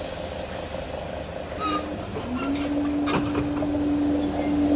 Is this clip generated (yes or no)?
no